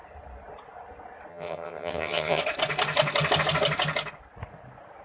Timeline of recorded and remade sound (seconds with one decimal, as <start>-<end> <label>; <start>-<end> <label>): 0.0-1.3 recorded; 1.3-2.4 remade; 2.4-5.0 recorded